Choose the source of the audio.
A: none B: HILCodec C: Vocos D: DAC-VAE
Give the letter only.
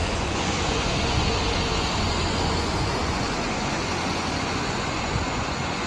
C